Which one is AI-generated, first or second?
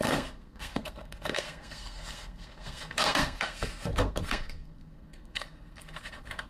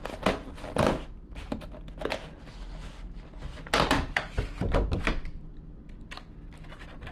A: first